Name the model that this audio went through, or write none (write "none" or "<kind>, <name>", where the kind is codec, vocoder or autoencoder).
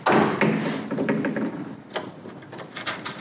none